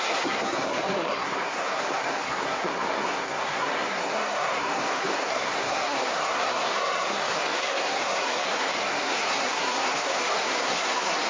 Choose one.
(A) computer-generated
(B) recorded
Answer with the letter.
A